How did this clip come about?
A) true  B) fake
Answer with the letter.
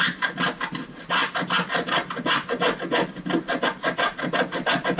A